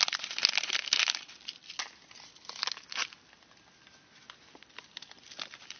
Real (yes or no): yes